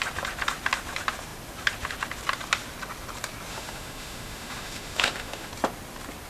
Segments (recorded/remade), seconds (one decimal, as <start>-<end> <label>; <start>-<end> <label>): 0.0-3.5 recorded; 3.5-5.5 remade; 5.5-6.3 recorded